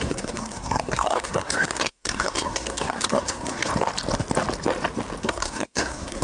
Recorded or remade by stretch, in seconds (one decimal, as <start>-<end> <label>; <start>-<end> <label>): 0.0-3.7 remade; 3.7-5.2 recorded; 5.2-6.2 remade